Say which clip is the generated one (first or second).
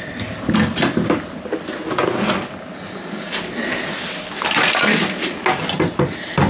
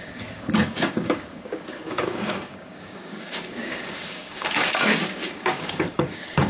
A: second